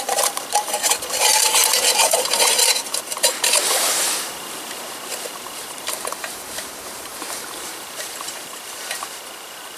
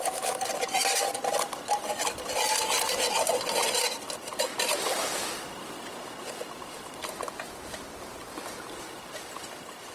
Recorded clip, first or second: second